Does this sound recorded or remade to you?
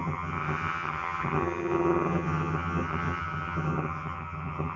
remade